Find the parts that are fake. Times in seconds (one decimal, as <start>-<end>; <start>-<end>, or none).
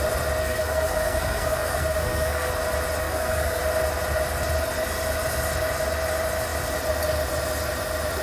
0.4-2.5; 3.0-3.6